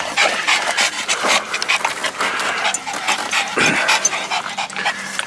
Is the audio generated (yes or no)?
no